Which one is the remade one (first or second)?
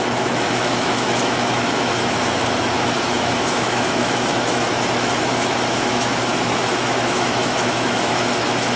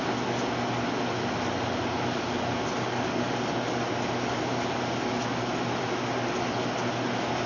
first